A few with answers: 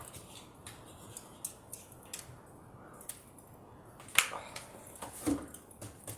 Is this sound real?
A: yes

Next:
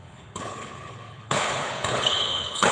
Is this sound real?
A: no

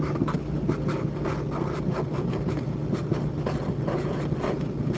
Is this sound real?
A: yes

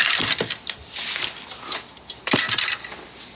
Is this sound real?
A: no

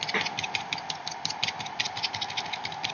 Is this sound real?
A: yes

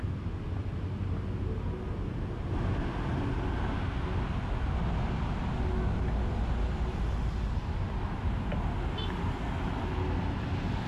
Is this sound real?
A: yes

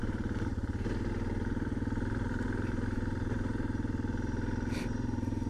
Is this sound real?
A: no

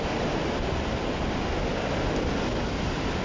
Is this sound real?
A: yes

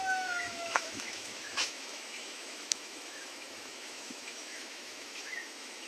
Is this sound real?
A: no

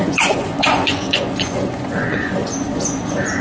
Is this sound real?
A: no